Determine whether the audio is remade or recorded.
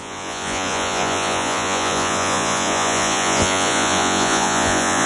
remade